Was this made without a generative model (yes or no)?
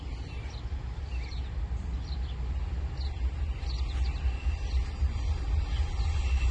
yes